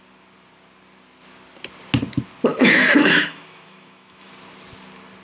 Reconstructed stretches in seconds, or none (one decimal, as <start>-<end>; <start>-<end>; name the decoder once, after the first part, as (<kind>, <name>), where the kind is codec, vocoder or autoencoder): 2.5-4.3 (autoencoder, DAC-VAE)